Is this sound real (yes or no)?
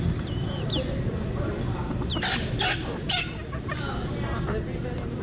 yes